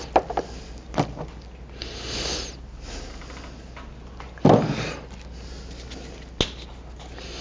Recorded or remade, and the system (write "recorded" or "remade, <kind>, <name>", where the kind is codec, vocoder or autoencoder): recorded